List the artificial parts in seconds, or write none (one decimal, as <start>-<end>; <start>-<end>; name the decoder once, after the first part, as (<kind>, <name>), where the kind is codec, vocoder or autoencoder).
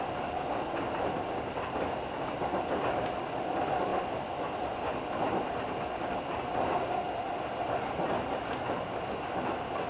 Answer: none